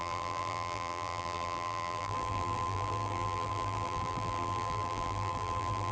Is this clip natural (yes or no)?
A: no